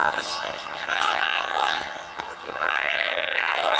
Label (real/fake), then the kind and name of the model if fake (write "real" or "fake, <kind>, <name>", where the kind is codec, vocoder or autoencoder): fake, vocoder, HiFi-GAN